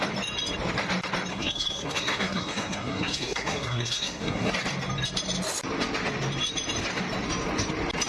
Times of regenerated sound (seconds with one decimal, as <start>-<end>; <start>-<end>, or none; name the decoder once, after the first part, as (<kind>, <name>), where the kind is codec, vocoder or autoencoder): 1.3-4.5 (codec, SNAC)